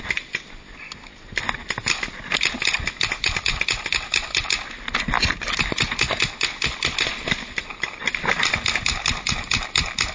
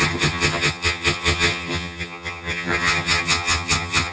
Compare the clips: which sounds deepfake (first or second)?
second